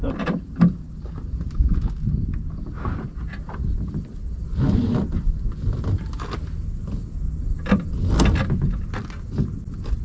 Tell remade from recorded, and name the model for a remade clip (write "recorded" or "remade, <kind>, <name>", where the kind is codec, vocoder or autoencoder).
recorded